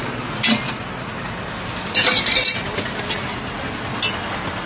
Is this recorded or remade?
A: recorded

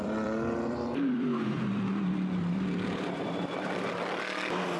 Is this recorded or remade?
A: remade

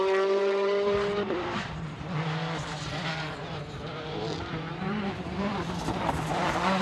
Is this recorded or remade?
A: remade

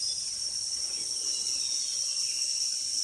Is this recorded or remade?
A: recorded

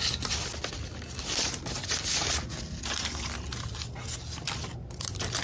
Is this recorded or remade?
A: recorded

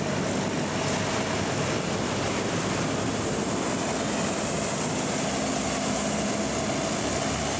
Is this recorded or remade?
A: recorded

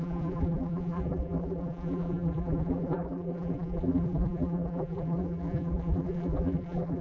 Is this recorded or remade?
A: remade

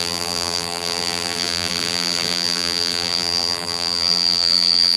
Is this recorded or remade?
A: remade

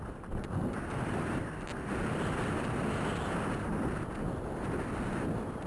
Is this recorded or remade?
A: remade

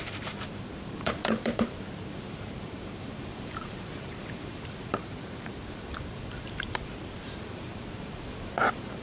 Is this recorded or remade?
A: remade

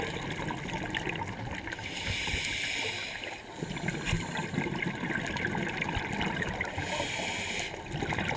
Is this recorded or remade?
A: recorded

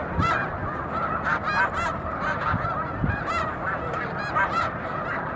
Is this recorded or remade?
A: remade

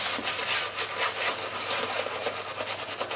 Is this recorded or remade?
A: recorded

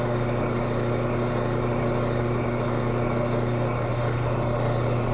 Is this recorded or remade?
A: recorded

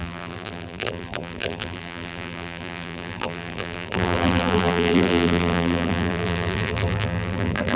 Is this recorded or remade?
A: remade